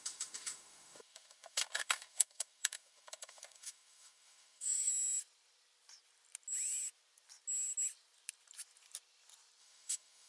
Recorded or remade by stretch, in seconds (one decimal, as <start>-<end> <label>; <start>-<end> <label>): 0.0-4.9 remade; 4.9-9.6 recorded; 9.6-10.3 remade